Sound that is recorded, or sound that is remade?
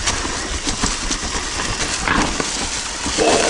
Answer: recorded